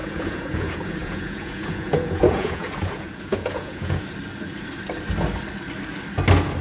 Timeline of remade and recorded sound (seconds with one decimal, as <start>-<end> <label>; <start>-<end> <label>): 0.0-4.0 remade; 4.0-6.6 recorded